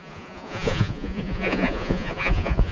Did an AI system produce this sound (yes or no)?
yes